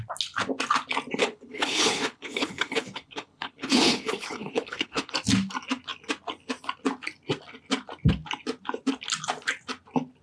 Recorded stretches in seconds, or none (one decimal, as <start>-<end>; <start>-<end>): 0.0-1.2; 5.1-10.2